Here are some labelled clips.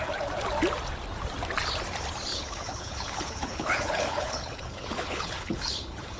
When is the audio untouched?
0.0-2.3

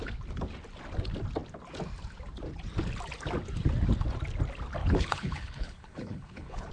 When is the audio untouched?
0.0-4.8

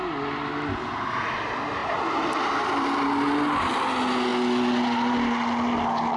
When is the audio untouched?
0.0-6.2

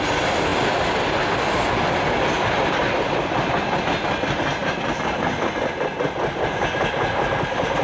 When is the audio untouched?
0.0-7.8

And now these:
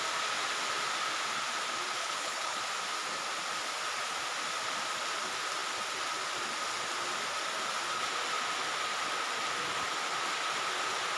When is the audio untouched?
0.0-2.0; 2.6-11.2

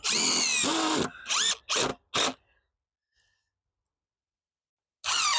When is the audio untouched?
0.0-5.4